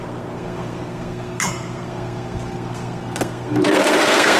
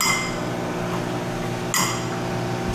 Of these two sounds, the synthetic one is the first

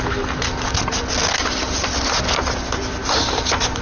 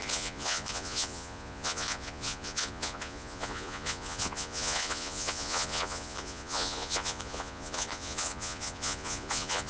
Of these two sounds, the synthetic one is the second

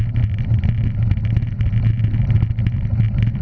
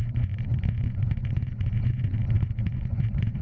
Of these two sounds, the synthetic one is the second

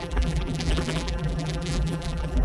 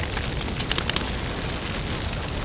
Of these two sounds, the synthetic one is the first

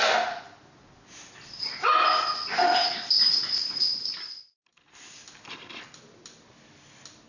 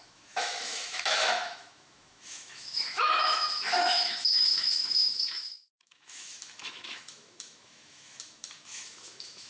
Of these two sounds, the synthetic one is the second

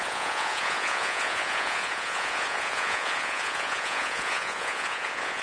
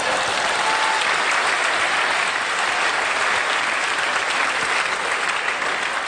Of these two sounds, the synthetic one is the first